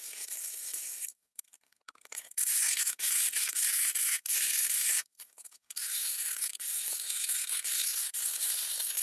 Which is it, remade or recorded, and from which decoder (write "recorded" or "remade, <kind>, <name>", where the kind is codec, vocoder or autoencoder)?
remade, codec, SNAC